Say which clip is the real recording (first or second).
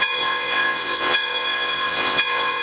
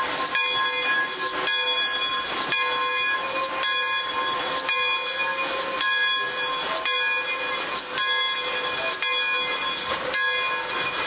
second